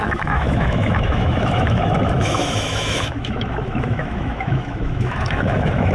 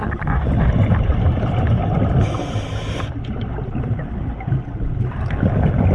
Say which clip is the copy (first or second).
first